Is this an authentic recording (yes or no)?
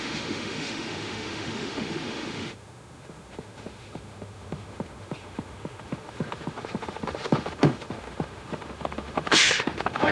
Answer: no